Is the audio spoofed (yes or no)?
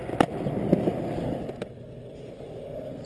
no